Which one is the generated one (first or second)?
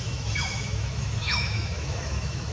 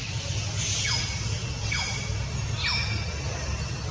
first